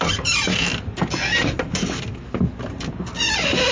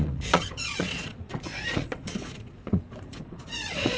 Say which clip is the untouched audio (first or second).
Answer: first